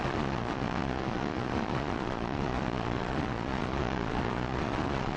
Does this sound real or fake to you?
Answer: fake